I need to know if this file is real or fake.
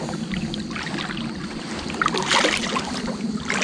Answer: real